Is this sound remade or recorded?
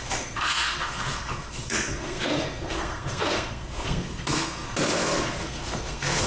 remade